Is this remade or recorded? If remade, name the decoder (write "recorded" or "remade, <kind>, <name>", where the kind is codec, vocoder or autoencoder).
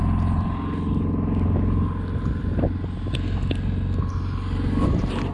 recorded